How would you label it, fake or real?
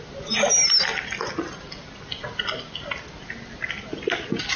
real